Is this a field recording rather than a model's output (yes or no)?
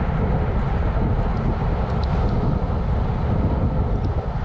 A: yes